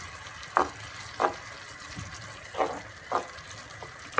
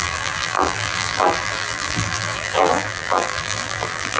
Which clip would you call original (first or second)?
first